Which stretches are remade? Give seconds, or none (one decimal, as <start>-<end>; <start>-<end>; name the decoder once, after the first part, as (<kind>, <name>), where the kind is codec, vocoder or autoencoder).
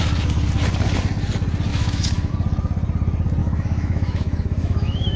1.7-2.3 (autoencoder, DAC-VAE); 3.4-5.2